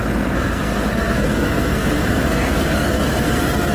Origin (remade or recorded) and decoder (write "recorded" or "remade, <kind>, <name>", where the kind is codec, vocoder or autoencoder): remade, codec, SNAC